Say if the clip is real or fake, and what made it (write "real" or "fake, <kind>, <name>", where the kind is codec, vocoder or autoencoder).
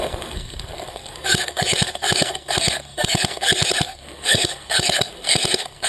fake, codec, SNAC